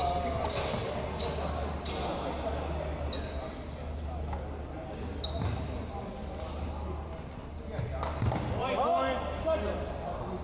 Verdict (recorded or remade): recorded